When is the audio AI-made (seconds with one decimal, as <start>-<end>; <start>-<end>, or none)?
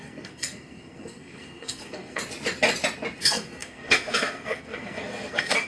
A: 0.0-2.2; 3.2-5.7